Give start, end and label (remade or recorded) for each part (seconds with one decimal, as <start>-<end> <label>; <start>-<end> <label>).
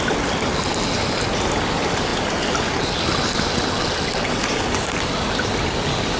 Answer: 0.0-6.2 recorded